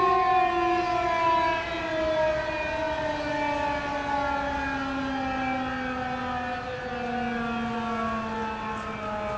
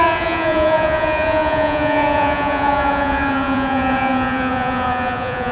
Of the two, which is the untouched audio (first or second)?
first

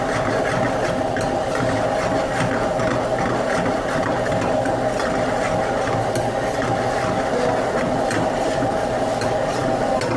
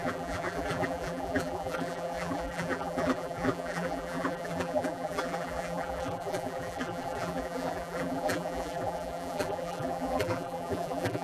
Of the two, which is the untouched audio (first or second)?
first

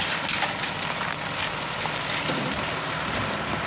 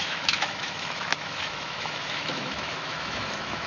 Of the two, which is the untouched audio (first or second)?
first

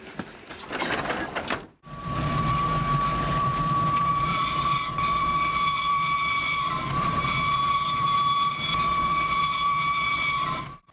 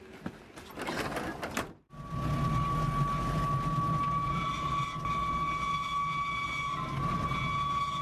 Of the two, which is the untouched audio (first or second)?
second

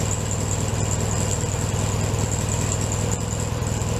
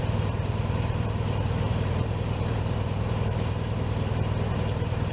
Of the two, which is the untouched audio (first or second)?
first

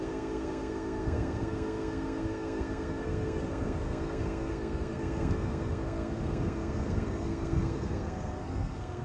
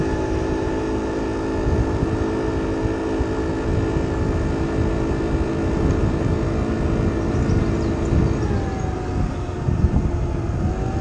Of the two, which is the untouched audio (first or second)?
second